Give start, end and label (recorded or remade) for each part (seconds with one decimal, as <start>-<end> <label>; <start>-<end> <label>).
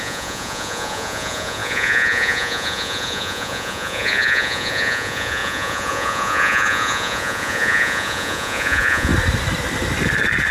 0.0-9.1 remade; 9.1-10.5 recorded